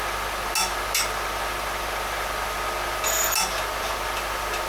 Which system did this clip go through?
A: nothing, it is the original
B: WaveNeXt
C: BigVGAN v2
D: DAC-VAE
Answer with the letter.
A